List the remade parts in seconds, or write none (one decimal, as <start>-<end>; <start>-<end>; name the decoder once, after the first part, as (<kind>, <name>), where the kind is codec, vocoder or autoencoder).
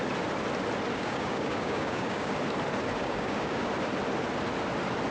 0.9-2.4 (codec, DAC); 3.0-3.7